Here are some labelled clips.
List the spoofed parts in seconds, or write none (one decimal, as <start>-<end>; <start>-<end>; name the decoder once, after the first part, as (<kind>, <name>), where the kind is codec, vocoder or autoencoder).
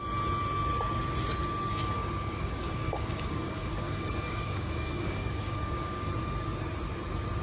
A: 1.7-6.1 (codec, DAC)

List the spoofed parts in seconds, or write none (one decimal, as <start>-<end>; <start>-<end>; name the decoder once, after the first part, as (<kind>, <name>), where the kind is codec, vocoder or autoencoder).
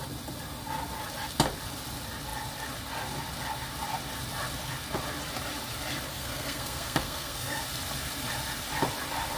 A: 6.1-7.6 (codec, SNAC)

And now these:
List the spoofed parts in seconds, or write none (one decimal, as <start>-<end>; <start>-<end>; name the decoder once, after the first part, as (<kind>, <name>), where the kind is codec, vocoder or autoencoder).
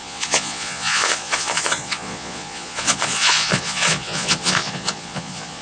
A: 0.0-5.6 (vocoder, Vocos)